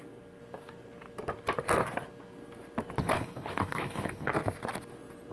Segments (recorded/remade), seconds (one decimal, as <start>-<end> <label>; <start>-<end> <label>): 0.0-3.0 recorded; 3.0-4.3 remade; 4.3-5.3 recorded